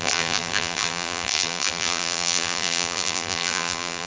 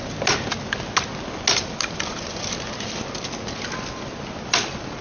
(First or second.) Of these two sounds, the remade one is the first